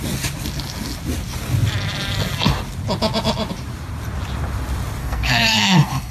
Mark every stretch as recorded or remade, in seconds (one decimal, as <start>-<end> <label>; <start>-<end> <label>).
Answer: 0.0-5.0 recorded; 5.0-6.1 remade